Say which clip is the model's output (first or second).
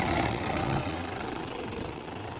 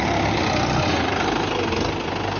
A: first